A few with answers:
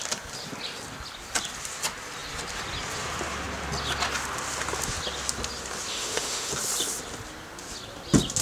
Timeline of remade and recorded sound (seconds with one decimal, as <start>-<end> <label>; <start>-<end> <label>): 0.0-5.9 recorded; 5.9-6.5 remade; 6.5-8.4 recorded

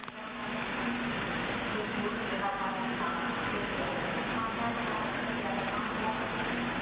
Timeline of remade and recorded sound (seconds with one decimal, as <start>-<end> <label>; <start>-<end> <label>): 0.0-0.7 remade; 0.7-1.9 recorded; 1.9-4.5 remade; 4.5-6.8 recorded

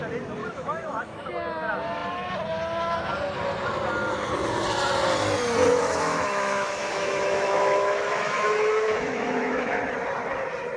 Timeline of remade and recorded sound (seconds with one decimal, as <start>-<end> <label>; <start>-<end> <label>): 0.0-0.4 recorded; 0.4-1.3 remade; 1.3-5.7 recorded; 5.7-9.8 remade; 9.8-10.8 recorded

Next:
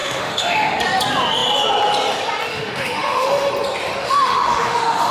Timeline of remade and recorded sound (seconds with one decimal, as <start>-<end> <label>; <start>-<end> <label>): 0.0-0.8 remade; 0.8-2.5 recorded; 2.5-3.5 remade; 3.5-4.0 recorded; 4.0-5.1 remade

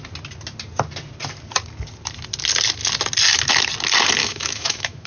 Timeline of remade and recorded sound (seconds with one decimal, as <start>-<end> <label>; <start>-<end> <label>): 0.0-4.2 recorded; 4.2-5.1 remade

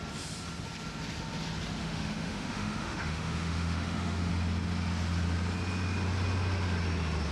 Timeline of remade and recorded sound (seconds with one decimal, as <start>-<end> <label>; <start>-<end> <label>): 0.0-1.8 recorded; 1.8-4.3 remade; 4.3-7.3 recorded

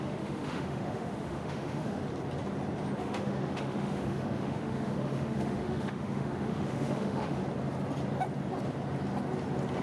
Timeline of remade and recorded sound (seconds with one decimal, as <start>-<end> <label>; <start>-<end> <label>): 0.0-2.0 remade; 2.0-3.0 recorded; 3.0-7.4 remade; 7.4-9.8 recorded